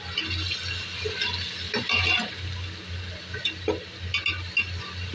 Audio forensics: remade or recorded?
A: recorded